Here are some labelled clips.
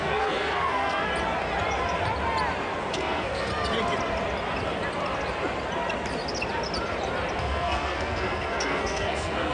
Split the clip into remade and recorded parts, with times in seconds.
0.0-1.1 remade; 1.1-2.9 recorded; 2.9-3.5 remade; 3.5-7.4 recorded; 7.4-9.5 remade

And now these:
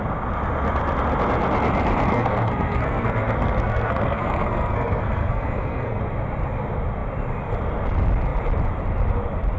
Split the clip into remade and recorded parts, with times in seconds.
0.0-2.1 recorded; 2.1-6.0 remade; 6.0-9.6 recorded

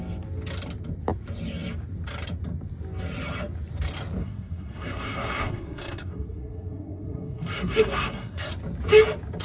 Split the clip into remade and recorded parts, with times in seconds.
0.0-4.2 recorded; 4.2-8.5 remade; 8.5-9.4 recorded

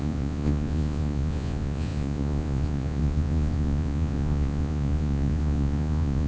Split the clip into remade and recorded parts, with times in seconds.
0.0-6.3 remade

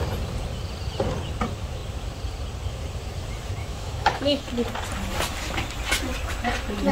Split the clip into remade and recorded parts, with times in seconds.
0.0-3.6 recorded; 3.6-4.4 remade; 4.4-6.9 recorded

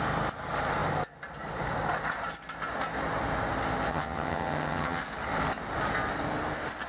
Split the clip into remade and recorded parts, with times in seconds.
0.0-3.9 recorded; 3.9-5.0 remade; 5.0-6.9 recorded